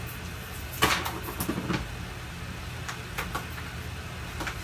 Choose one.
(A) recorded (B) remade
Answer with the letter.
A